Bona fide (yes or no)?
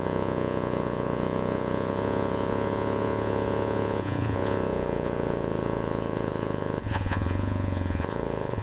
no